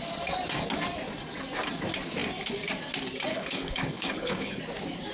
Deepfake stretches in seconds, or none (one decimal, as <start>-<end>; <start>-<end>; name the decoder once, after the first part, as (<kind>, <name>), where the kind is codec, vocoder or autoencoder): 3.3-4.6 (codec, HILCodec)